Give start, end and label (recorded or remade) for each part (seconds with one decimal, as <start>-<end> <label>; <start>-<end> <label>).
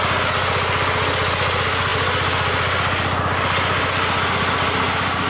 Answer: 0.0-5.3 recorded